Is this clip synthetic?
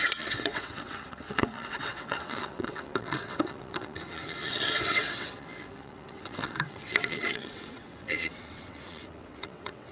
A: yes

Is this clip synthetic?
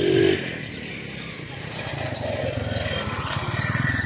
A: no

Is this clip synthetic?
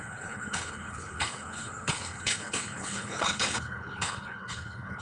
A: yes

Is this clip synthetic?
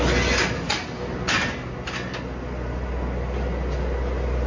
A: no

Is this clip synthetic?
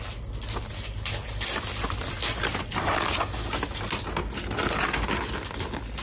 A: no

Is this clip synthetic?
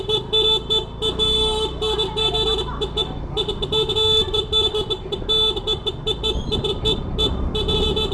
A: no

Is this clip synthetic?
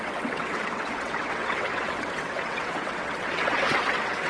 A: yes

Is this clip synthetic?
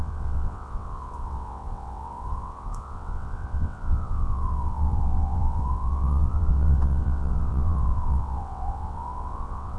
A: yes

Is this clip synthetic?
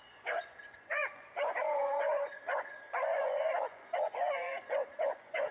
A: yes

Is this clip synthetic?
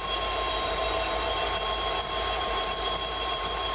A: yes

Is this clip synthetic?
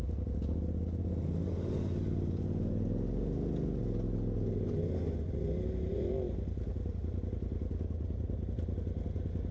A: no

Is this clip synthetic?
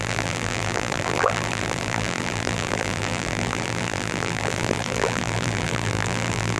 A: yes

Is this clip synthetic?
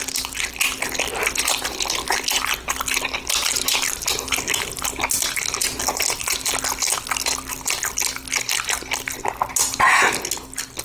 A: no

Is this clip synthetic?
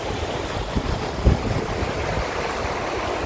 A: no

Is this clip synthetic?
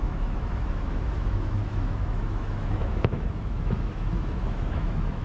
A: yes